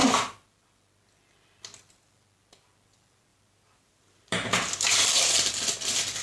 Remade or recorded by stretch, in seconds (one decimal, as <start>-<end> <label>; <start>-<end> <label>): 0.0-3.3 recorded; 3.3-5.6 remade; 5.6-6.2 recorded